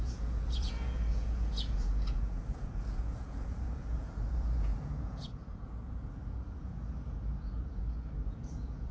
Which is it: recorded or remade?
remade